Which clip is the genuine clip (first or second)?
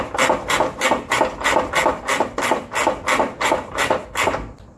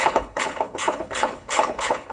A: first